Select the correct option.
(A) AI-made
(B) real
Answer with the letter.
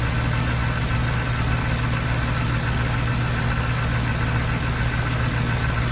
B